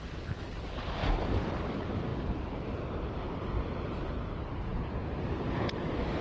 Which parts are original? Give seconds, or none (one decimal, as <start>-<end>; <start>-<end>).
0.0-6.2

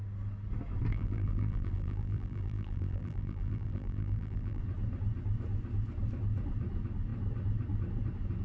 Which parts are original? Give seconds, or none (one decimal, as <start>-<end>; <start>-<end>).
0.0-0.9; 4.6-8.4

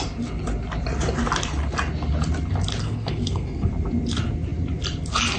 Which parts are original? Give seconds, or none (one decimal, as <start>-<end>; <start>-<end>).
0.0-2.8; 3.7-5.4

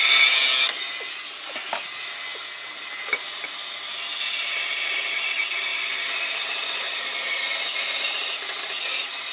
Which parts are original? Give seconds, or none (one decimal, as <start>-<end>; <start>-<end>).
0.0-5.7; 7.4-9.3

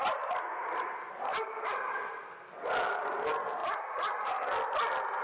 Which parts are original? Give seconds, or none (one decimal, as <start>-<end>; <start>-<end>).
0.0-0.6; 2.2-3.6; 4.3-5.2